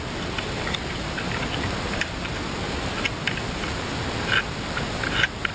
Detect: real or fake real